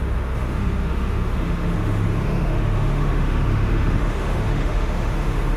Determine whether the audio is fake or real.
fake